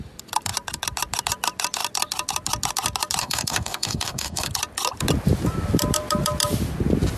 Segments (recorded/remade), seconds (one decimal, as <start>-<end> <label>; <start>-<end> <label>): 0.0-3.2 recorded; 3.2-4.5 remade; 4.5-7.2 recorded